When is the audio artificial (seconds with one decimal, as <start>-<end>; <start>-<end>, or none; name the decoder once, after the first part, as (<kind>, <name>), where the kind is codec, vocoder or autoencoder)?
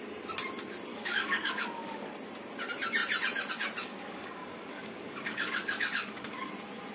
0.9-2.1 (codec, DAC); 3.9-6.5